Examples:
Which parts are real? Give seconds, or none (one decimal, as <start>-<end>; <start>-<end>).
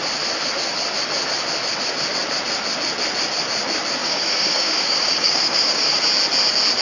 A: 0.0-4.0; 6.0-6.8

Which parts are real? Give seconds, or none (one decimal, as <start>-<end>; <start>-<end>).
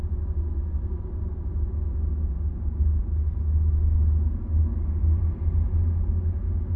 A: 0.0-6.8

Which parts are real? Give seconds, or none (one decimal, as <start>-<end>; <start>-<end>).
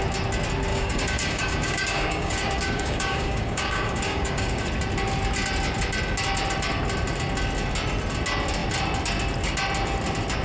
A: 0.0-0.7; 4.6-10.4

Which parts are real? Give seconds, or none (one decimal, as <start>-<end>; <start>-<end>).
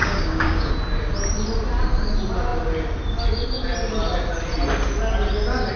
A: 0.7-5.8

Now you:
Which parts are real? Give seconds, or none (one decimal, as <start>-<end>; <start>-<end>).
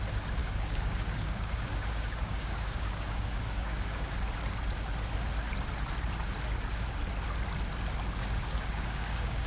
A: 0.0-0.4; 4.1-8.2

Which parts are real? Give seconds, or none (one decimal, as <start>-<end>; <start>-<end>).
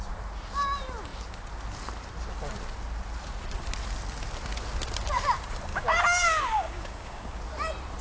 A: 0.0-5.7; 7.3-8.0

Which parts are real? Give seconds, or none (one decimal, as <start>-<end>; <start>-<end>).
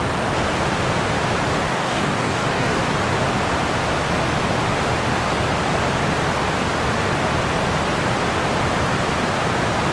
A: 0.0-1.7; 2.8-9.9